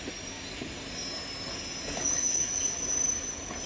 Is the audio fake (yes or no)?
no